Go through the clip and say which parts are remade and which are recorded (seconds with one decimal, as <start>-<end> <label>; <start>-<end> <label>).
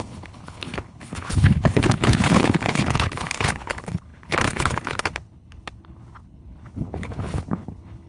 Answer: 0.0-8.1 remade